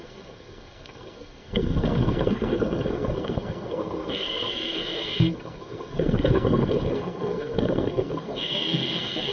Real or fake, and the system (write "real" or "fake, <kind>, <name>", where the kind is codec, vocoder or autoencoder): fake, codec, SNAC